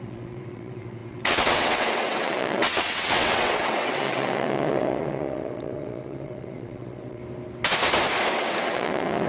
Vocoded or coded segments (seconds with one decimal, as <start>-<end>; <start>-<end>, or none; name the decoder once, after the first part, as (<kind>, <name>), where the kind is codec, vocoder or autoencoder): 0.0-7.2 (vocoder, WaveNeXt); 8.3-9.3